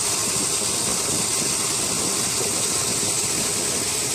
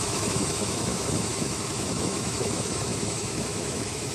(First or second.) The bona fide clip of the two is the first